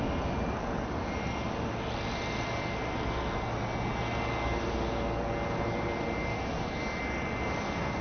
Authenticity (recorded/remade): recorded